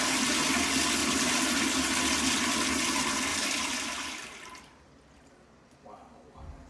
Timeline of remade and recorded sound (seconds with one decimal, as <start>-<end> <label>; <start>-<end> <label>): 0.0-1.0 recorded; 1.0-1.6 remade; 1.6-3.3 recorded; 3.3-4.8 remade; 4.8-6.7 recorded